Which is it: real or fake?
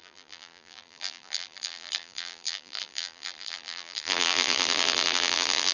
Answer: fake